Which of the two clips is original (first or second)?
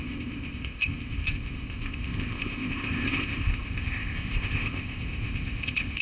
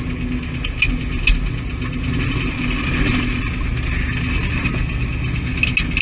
second